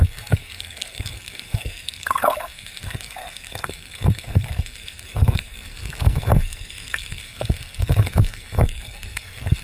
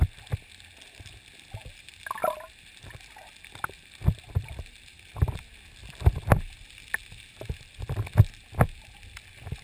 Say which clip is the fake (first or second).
first